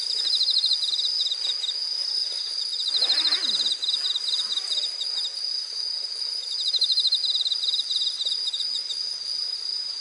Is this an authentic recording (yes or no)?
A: yes